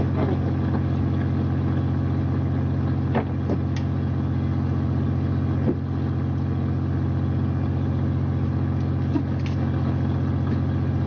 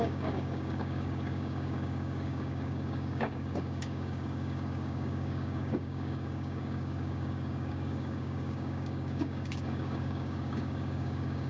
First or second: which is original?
first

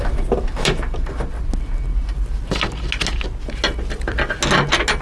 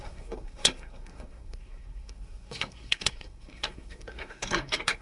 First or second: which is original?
first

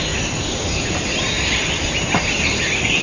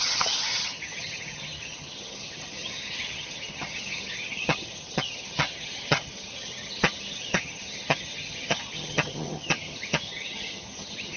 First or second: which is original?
first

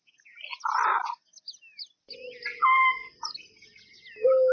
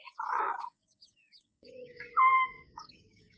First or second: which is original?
first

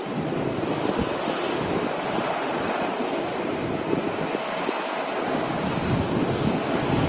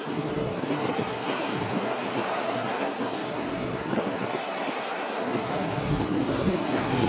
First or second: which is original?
first